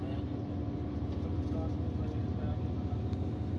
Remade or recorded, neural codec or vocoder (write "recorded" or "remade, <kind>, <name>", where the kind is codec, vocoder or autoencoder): recorded